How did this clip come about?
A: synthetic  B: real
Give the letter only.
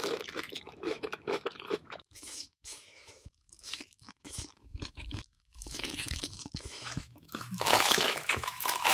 A